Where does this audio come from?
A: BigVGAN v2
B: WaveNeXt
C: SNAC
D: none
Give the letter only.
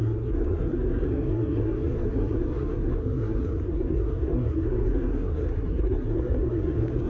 C